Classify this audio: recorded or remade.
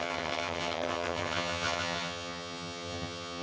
remade